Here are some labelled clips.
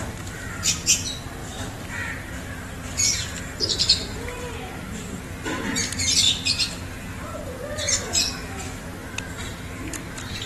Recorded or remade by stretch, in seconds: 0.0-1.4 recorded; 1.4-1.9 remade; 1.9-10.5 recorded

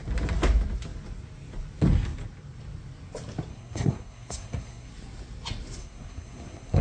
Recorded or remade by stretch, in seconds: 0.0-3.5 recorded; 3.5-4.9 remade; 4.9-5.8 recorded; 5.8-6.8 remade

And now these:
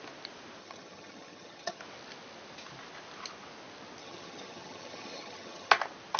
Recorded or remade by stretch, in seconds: 0.0-0.6 recorded; 0.6-1.8 remade; 1.8-4.0 recorded; 4.0-5.7 remade; 5.7-6.2 recorded

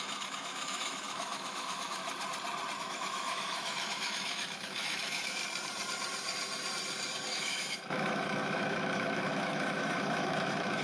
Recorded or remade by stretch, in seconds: 0.0-2.0 remade; 2.0-2.8 recorded; 2.8-5.4 remade; 5.4-7.3 recorded; 7.3-10.8 remade

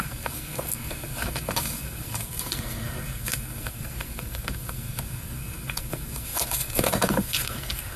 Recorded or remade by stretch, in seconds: 0.0-8.0 remade

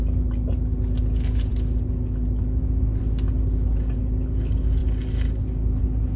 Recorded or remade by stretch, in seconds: 0.0-6.2 recorded

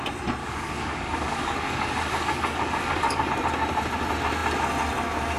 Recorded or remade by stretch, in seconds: 0.0-0.4 recorded; 0.4-3.3 remade; 3.3-5.4 recorded

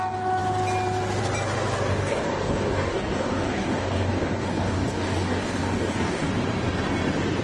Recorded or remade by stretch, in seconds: 0.0-1.9 recorded; 1.9-6.3 remade; 6.3-7.4 recorded